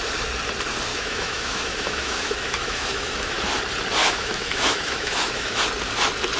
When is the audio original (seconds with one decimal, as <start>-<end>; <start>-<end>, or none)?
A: 0.0-0.9; 3.4-4.0; 5.6-6.4